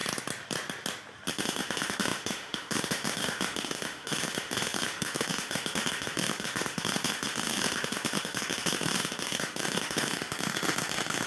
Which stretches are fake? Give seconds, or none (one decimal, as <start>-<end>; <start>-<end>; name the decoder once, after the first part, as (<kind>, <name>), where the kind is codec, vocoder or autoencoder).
1.3-11.3 (autoencoder, DAC-VAE)